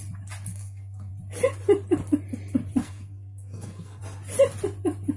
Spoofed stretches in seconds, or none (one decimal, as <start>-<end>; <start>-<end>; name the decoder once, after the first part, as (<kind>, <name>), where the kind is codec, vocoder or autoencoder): 0.5-1.1 (codec, SNAC); 2.8-4.0